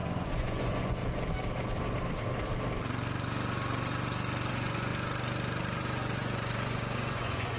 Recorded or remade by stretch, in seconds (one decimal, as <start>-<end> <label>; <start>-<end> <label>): 0.0-1.0 remade; 1.0-4.5 recorded; 4.5-4.9 remade; 4.9-6.0 recorded; 6.0-7.6 remade